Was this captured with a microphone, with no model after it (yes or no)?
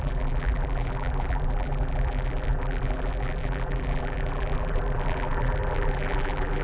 no